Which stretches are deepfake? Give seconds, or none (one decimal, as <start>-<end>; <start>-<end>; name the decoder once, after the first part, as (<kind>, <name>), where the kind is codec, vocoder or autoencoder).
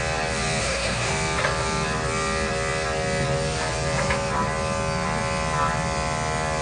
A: 0.6-1.1 (codec, SNAC)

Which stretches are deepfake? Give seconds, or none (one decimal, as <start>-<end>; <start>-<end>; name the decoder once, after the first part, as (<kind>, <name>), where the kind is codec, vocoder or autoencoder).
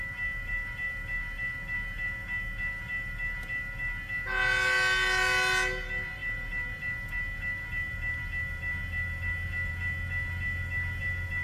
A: none